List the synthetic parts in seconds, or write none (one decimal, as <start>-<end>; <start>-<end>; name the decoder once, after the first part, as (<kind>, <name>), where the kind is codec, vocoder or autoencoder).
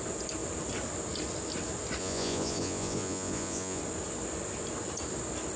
2.0-3.8 (vocoder, Vocos)